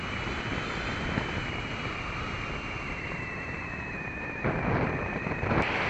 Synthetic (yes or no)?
yes